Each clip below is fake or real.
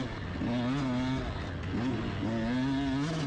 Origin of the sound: real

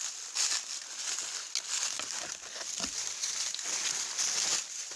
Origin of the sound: real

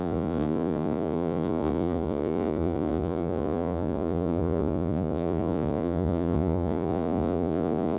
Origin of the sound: fake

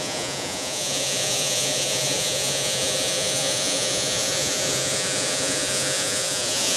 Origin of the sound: fake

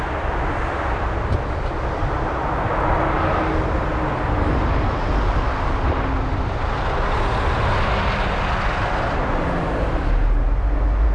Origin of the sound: real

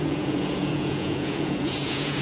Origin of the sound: fake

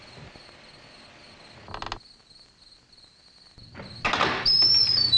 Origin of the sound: real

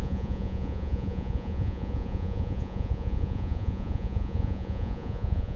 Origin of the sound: fake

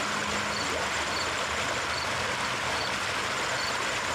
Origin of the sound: real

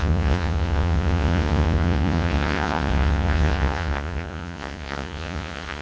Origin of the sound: fake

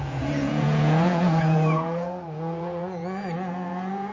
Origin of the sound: fake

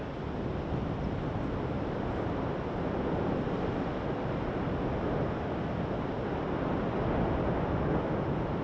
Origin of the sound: real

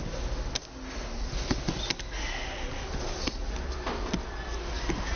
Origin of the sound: real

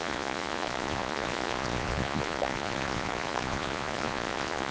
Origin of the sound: fake